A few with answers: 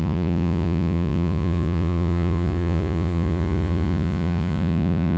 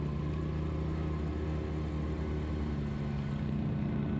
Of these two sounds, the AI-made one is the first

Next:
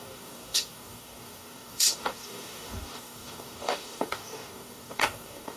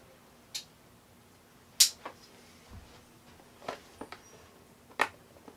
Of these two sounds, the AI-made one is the first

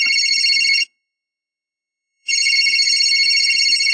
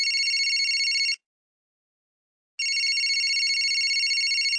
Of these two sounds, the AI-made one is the first